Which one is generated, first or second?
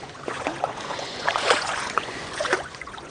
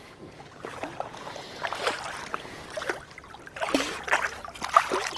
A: first